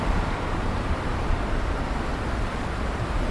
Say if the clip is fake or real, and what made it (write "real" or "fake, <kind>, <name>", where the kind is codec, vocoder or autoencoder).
fake, vocoder, BigVGAN v2